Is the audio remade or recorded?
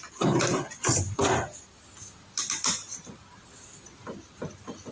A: recorded